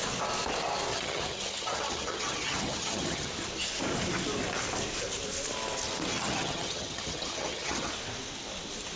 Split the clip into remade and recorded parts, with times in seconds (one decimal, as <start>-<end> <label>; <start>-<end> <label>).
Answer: 0.0-0.9 recorded; 0.9-3.3 remade; 3.3-6.1 recorded; 6.1-7.9 remade; 7.9-9.0 recorded